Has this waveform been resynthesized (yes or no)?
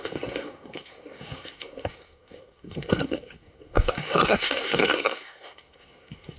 yes